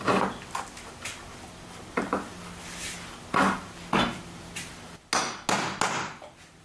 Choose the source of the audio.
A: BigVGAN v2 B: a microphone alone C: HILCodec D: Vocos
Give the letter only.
B